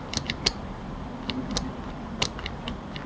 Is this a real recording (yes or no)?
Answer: yes